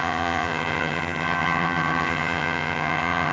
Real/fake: fake